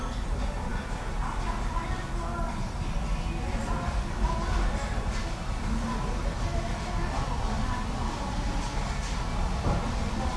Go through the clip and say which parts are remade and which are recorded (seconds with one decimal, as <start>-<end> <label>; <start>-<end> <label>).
0.0-10.4 recorded